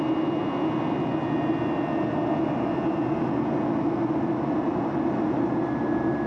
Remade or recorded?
recorded